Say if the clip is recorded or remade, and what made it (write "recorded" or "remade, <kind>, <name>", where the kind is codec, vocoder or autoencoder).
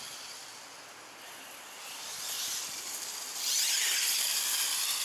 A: remade, vocoder, BigVGAN v2